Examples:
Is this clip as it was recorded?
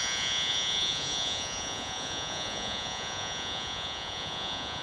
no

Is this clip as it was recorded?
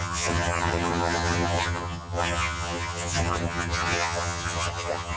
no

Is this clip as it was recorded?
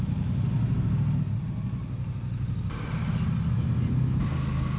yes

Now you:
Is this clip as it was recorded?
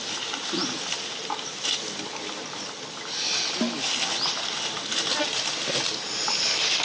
yes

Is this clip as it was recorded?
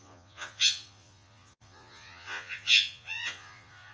no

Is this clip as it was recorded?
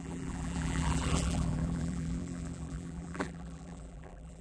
no